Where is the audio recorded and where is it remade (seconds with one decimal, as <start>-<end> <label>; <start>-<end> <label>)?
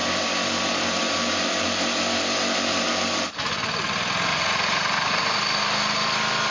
0.0-4.3 recorded; 4.3-5.4 remade; 5.4-6.5 recorded